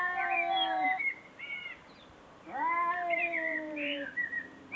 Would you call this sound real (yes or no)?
no